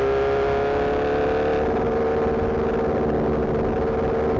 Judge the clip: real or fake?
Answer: real